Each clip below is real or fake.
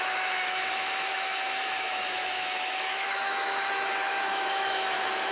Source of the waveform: fake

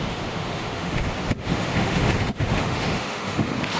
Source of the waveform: fake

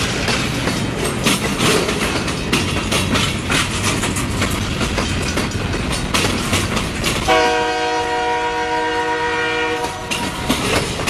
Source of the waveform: real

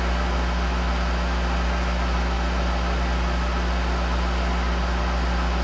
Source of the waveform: real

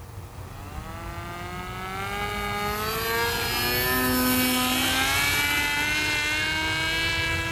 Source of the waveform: real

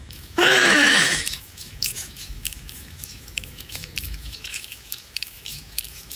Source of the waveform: fake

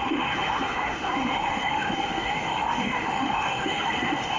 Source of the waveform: fake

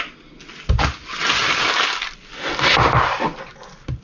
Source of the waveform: real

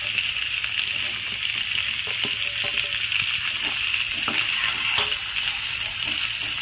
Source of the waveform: real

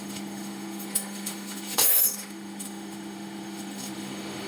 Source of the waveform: fake